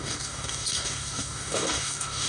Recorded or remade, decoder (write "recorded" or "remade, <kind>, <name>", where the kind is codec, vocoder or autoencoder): remade, codec, DAC